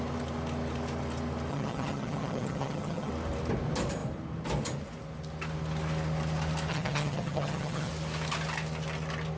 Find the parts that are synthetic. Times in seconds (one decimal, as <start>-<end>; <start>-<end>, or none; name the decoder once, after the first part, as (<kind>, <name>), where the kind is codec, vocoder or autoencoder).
1.5-3.1 (vocoder, HiFi-GAN); 6.7-7.9